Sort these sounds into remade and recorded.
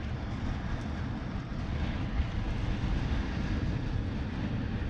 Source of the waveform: recorded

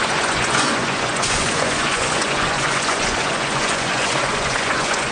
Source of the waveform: remade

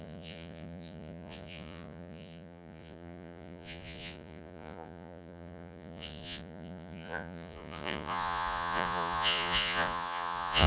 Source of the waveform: remade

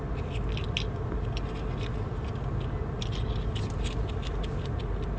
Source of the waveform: recorded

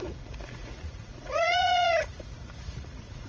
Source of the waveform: remade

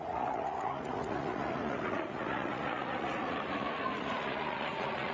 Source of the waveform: remade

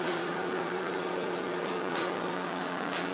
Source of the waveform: remade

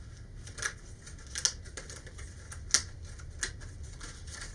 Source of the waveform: recorded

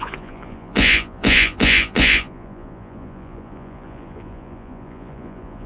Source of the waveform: remade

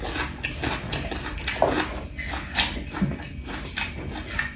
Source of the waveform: recorded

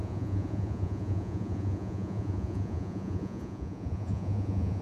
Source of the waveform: remade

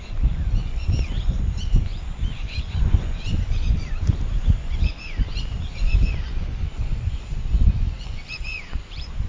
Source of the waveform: remade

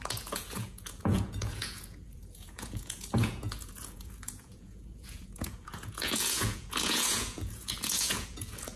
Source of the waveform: remade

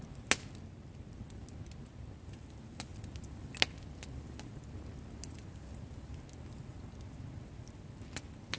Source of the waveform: recorded